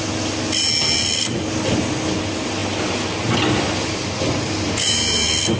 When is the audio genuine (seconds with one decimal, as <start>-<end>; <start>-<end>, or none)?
0.0-5.6